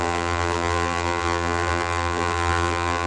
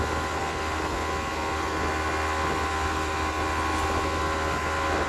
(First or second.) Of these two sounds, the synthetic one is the first